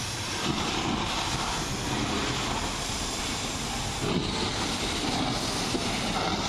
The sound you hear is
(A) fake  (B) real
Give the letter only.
A